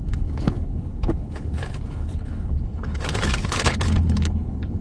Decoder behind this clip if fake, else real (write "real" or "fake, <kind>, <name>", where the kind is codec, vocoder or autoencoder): fake, codec, HILCodec